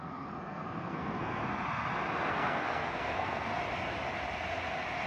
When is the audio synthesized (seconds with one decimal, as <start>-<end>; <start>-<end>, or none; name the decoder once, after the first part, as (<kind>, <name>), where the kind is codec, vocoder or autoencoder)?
0.0-1.4 (codec, SNAC); 2.3-3.5